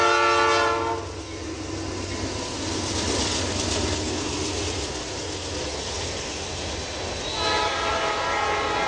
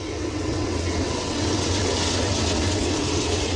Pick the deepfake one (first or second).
second